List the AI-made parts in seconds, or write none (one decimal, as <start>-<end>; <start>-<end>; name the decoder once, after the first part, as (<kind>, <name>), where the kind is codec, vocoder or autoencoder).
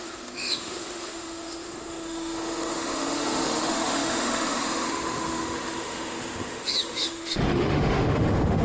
0.0-8.6 (autoencoder, DAC-VAE)